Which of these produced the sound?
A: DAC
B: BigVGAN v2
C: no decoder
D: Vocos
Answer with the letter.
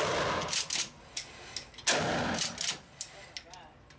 C